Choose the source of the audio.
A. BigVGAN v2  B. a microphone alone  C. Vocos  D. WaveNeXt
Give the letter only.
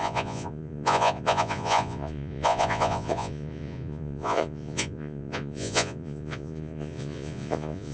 C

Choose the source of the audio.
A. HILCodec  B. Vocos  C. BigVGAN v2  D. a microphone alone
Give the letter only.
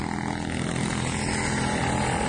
D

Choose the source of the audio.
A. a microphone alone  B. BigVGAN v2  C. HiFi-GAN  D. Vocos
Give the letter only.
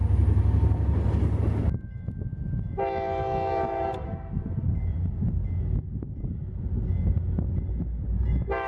A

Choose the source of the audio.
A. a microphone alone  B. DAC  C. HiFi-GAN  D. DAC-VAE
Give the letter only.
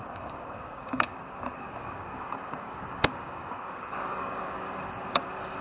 B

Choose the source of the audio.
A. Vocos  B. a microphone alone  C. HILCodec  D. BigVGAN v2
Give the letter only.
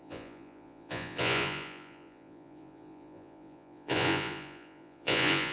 A